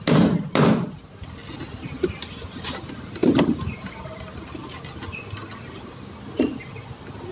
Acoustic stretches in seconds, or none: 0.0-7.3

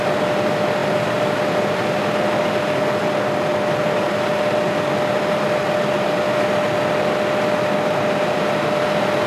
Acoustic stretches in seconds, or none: 0.0-9.3

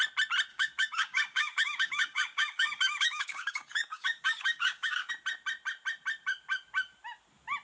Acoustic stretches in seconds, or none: 0.0-0.5; 5.1-7.6

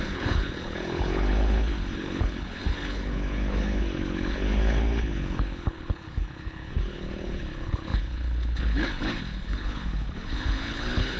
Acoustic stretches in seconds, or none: none